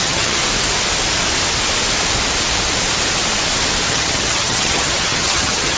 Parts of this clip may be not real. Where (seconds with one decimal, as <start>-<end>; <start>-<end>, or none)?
0.0-0.4; 3.9-5.8

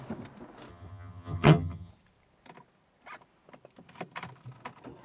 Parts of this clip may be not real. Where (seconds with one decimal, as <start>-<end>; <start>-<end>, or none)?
0.7-1.9

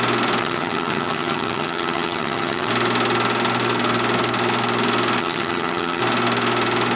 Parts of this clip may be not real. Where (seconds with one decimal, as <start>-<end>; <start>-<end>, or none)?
0.4-2.7; 5.2-6.0

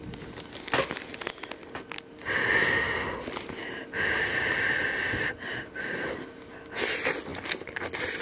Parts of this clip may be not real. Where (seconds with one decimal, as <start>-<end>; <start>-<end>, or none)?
none

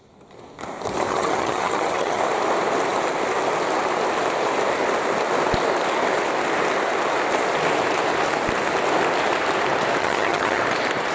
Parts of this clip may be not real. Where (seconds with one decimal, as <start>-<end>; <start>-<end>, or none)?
1.1-2.2; 10.0-10.6

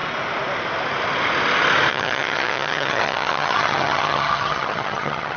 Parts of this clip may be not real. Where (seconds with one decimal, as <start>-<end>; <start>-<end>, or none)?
1.9-5.4

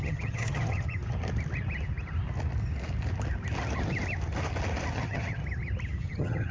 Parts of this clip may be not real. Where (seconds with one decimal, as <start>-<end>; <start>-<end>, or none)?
0.0-1.0; 4.9-5.4; 6.0-6.5